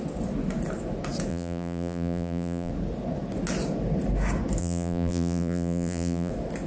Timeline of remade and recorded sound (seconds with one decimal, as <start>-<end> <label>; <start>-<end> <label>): 0.0-1.3 recorded; 1.3-2.7 remade; 2.7-4.6 recorded; 4.6-6.3 remade; 6.3-6.7 recorded